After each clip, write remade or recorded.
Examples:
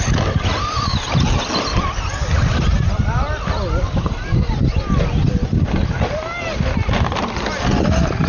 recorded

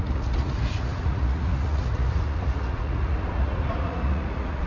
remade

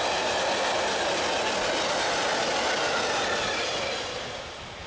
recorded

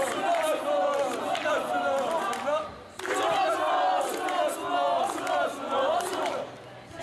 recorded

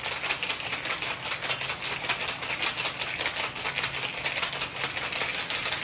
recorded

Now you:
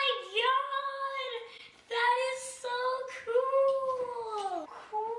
remade